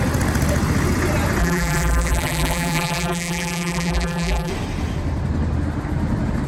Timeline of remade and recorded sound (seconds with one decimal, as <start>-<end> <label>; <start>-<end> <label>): 0.0-1.4 recorded; 1.4-4.5 remade; 4.5-6.5 recorded